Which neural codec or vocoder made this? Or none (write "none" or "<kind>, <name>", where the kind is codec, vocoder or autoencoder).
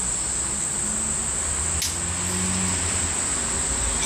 none